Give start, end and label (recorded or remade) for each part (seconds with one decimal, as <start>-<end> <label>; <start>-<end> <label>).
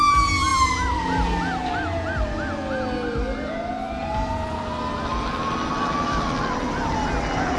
0.0-7.6 recorded